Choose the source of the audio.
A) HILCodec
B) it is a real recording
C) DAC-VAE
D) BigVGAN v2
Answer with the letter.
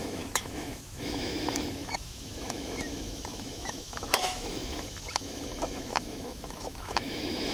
C